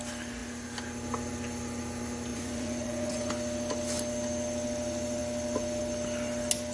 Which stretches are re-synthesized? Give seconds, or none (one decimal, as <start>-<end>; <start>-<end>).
2.3-3.3